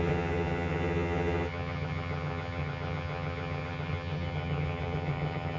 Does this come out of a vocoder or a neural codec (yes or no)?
yes